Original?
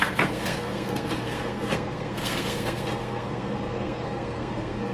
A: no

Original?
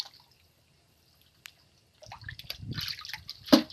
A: yes